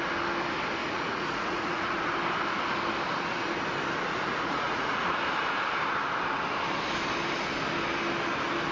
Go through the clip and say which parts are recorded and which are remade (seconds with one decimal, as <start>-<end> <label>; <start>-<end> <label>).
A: 0.0-0.8 recorded; 0.8-2.0 remade; 2.0-4.1 recorded; 4.1-5.2 remade; 5.2-8.7 recorded